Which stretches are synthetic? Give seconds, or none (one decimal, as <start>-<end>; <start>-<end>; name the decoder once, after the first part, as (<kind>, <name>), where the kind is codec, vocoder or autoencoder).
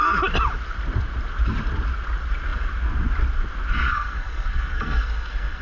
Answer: 3.9-5.6 (codec, SNAC)